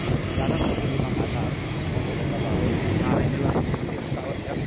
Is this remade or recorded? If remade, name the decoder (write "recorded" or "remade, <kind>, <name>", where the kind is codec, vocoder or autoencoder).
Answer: recorded